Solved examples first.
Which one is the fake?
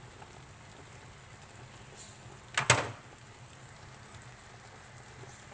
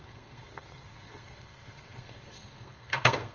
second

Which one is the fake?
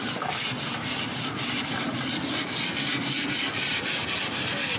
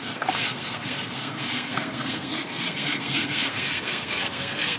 second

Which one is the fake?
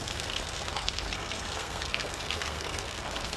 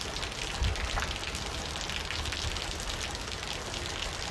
first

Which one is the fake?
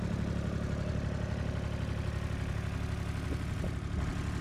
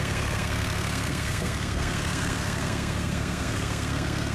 second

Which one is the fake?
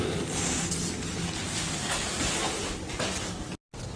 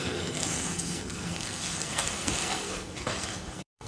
second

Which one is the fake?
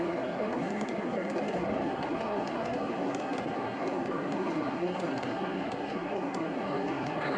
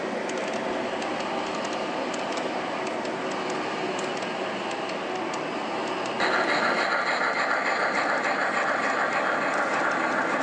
first